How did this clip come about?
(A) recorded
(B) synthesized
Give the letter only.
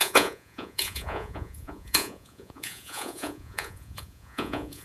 B